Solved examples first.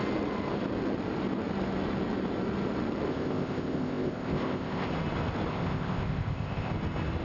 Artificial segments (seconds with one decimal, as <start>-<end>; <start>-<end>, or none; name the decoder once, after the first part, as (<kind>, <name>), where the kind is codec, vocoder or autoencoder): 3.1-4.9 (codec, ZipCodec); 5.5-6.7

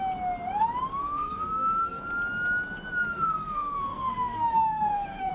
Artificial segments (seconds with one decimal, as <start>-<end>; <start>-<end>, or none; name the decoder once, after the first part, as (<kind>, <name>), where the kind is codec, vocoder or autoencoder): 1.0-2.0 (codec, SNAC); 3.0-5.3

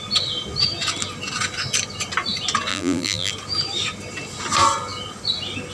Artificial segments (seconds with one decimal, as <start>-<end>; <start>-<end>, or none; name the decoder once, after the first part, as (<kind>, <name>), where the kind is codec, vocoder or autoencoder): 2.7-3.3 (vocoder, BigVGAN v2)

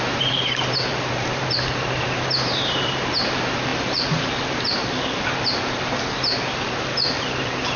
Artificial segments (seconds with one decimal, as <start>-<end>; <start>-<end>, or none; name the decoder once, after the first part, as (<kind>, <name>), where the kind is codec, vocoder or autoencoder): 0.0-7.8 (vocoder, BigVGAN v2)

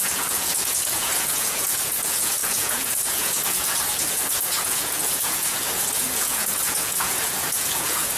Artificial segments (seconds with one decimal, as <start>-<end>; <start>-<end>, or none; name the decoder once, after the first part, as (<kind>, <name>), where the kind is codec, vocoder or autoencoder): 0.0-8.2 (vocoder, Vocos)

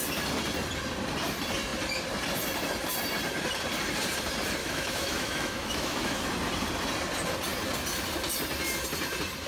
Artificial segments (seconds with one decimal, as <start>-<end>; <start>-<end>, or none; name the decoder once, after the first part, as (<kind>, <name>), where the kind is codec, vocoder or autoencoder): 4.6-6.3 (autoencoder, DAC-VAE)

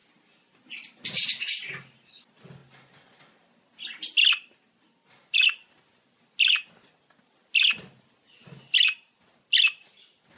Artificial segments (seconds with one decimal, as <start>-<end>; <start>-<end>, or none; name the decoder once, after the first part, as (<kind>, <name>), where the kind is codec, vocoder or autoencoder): none